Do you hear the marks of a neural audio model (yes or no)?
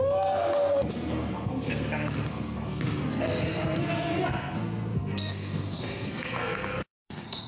yes